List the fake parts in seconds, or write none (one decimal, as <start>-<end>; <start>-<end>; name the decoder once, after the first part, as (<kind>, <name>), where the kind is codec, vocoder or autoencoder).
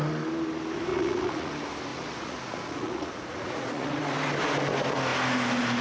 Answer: 0.9-1.5 (vocoder, Vocos); 1.9-4.0